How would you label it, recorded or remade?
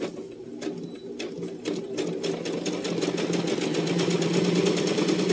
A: recorded